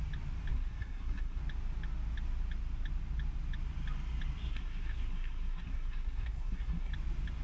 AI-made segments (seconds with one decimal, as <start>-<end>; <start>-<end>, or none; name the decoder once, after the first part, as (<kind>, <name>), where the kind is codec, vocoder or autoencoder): 0.5-1.4 (codec, SNAC); 4.5-6.9